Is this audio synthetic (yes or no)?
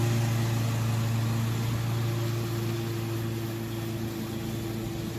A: no